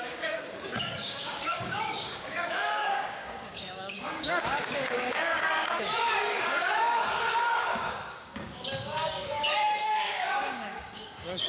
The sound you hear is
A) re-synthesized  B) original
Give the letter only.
A